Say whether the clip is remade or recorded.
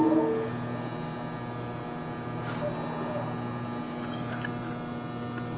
recorded